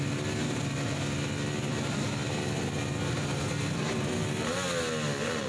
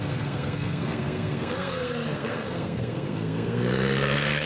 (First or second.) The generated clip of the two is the second